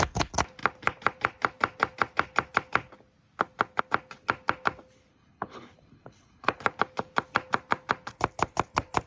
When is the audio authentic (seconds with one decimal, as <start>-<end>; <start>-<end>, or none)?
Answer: 0.0-5.1; 6.6-9.1